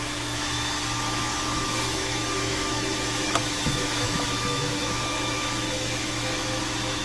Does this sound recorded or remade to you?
remade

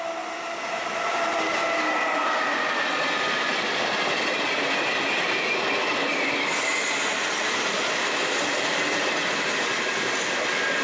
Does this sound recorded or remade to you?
recorded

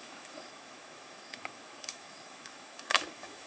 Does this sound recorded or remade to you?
remade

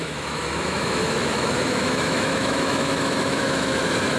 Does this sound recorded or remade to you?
remade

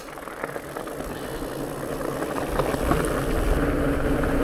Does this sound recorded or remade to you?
recorded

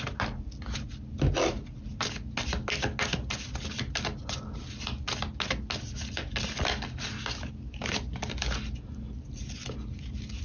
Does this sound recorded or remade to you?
recorded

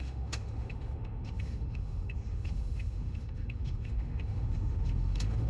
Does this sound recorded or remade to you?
remade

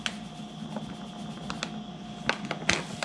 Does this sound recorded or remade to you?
recorded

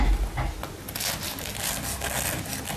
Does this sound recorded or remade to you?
recorded